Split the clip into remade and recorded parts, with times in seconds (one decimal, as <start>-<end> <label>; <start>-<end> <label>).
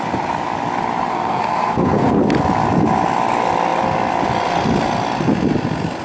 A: 0.0-1.1 recorded; 1.1-2.2 remade; 2.2-6.0 recorded